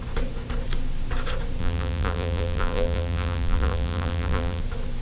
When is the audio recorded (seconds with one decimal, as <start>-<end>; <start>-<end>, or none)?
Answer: 0.0-1.6; 4.6-5.0